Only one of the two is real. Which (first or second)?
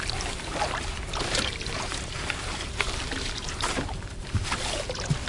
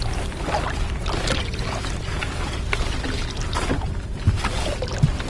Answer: second